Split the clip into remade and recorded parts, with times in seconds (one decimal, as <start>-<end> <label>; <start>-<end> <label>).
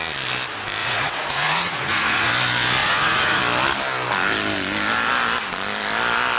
0.0-0.8 recorded; 0.8-2.3 remade; 2.3-2.8 recorded; 2.8-3.4 remade; 3.4-6.4 recorded